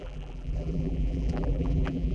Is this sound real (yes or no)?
no